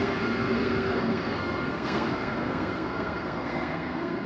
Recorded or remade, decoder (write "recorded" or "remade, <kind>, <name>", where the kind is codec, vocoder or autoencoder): remade, codec, SNAC